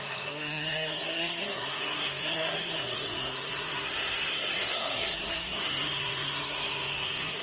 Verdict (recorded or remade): remade